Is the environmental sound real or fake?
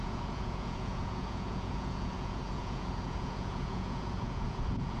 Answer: fake